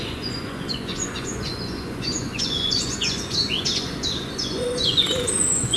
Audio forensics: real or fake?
fake